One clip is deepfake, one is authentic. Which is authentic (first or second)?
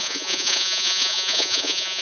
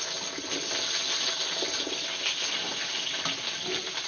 second